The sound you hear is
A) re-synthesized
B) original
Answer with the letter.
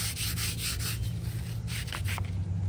B